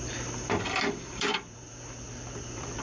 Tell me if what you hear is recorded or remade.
remade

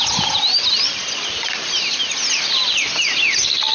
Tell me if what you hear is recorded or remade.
recorded